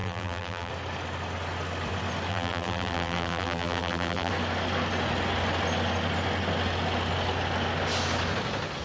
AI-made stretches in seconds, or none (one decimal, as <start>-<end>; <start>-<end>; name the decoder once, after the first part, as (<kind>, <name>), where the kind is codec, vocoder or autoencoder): 0.0-0.7 (vocoder, BigVGAN v2); 2.3-4.3